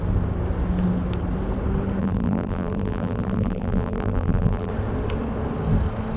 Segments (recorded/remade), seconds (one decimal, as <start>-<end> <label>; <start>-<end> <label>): 0.0-2.0 recorded; 2.0-4.7 remade; 4.7-6.2 recorded